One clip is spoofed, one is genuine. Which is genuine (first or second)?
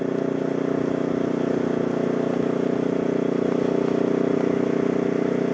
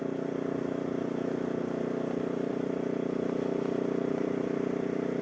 first